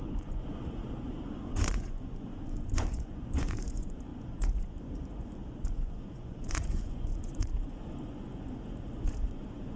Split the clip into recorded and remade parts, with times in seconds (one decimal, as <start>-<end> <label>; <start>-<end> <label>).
0.0-9.8 remade